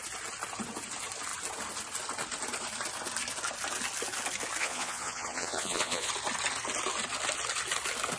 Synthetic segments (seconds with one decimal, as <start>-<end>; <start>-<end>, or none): 4.6-6.1